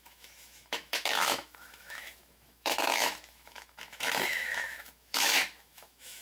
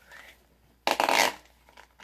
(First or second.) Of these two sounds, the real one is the second